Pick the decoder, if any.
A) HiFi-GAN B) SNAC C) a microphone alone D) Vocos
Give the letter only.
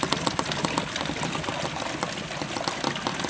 C